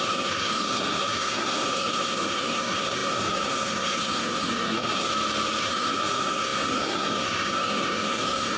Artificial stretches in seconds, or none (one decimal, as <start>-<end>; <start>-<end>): 0.0-5.1; 5.6-8.6

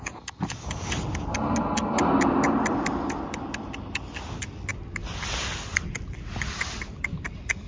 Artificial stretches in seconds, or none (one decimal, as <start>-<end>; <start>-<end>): none

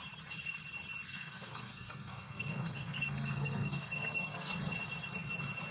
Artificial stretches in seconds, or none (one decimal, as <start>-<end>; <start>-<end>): 1.1-4.5

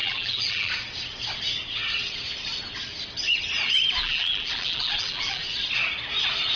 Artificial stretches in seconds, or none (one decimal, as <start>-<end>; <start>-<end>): 0.0-0.7; 4.0-5.4

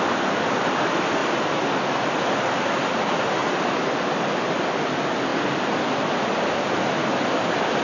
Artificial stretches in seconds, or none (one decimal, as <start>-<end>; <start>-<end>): 0.0-1.2; 2.2-3.4; 4.4-7.8